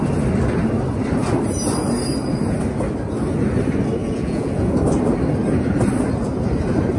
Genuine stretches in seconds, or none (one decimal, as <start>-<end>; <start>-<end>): 0.0-4.0; 4.8-7.0